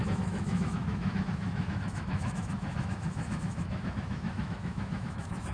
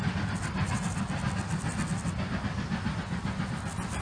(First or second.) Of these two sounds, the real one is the second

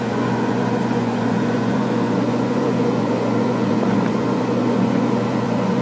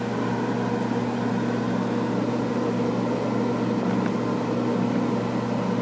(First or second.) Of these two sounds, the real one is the second